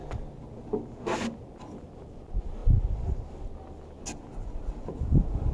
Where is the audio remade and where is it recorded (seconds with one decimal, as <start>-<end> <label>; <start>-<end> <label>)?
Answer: 0.0-5.5 recorded